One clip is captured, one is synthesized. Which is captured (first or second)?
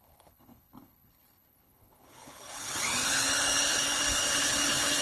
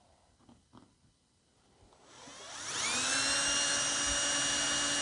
second